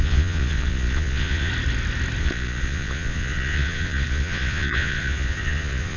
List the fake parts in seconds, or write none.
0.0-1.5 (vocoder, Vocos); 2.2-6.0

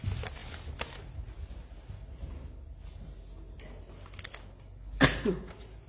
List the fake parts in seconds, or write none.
none

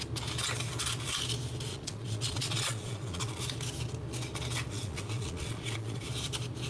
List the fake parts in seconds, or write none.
1.7-3.4 (vocoder, Vocos); 4.7-6.0

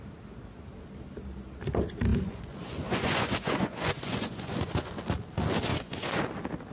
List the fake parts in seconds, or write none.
2.1-5.0 (vocoder, Vocos); 5.7-6.2

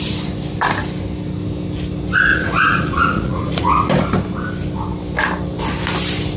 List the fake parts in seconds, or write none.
2.3-3.9 (vocoder, Vocos)

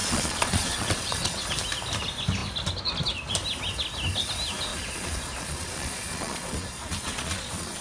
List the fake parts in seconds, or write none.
0.0-1.4 (vocoder, Vocos); 4.7-7.8

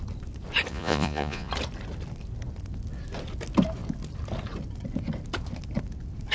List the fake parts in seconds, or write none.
0.7-1.5 (vocoder, Vocos)

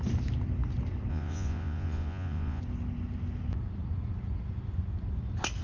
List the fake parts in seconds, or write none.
1.1-2.6 (vocoder, Vocos)